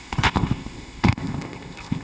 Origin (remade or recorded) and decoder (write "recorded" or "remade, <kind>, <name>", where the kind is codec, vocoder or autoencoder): remade, codec, ZipCodec